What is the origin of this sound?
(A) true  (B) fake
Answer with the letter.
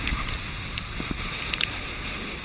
A